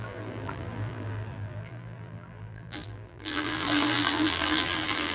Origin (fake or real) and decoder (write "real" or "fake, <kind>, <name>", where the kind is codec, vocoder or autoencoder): fake, vocoder, BigVGAN v2